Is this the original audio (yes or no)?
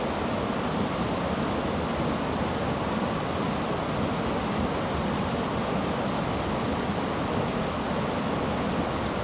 yes